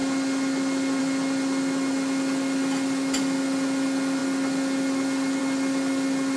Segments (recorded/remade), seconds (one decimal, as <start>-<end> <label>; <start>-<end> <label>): 0.0-6.4 recorded